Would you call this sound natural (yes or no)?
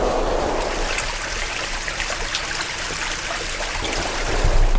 yes